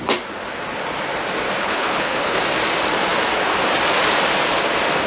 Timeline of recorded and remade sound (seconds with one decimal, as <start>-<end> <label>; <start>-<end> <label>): 0.0-1.6 recorded; 1.6-2.4 remade; 2.4-5.1 recorded